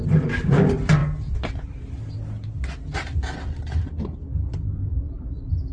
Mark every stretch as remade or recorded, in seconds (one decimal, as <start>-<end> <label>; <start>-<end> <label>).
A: 0.0-1.0 remade; 1.0-4.4 recorded; 4.4-5.7 remade